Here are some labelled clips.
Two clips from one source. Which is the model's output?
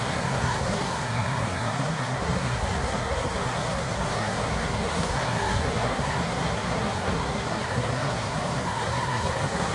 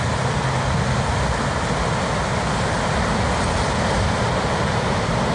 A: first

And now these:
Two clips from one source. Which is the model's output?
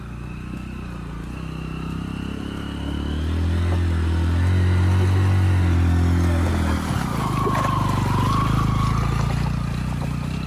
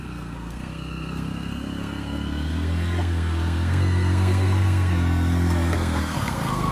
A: second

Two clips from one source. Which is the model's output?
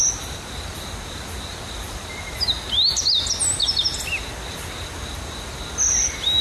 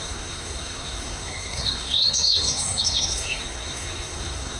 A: second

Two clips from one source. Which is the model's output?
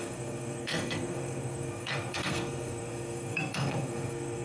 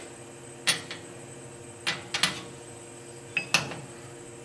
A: first